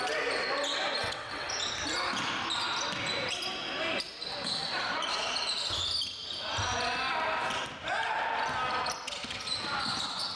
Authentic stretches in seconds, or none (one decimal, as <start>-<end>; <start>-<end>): 0.0-1.0; 1.5-10.3